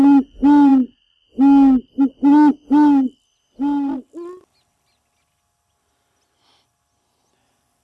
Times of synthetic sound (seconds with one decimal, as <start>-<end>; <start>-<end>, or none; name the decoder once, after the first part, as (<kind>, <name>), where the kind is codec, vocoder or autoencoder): none